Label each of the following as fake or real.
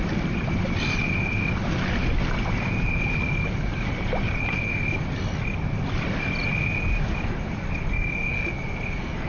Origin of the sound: real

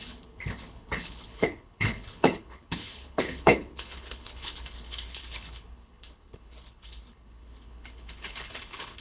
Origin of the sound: fake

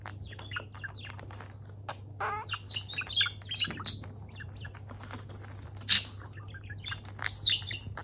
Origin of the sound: real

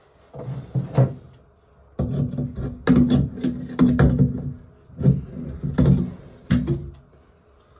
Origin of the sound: real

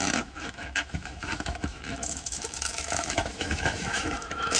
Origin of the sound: fake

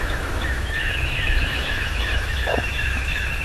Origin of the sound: fake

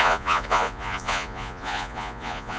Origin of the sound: fake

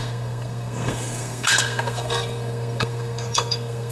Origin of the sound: fake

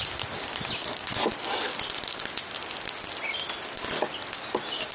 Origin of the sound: real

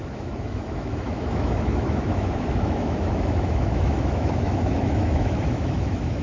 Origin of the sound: fake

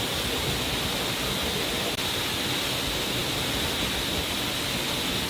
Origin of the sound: real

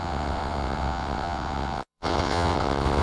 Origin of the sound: fake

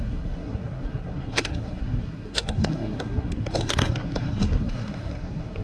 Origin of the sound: fake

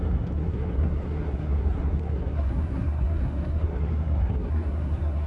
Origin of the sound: fake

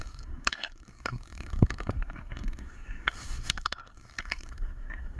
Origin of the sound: fake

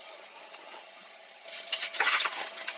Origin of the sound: fake